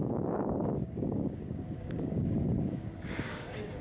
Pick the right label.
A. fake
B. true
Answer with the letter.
A